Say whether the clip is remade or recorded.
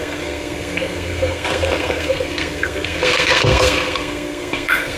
remade